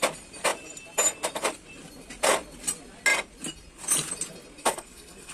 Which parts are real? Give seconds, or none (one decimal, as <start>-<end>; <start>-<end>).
0.0-4.6